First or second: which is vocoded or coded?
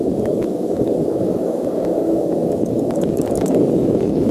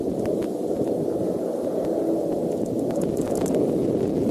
first